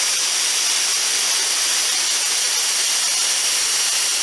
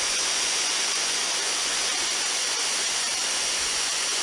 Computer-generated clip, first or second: second